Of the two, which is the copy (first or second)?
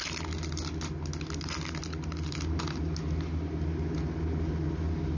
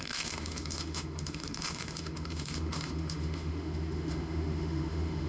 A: second